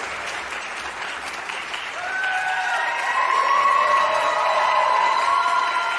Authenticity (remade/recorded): remade